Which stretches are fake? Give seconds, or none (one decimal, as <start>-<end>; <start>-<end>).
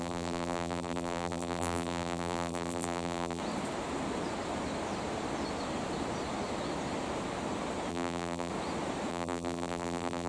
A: 0.0-3.4; 7.9-8.5; 9.1-10.3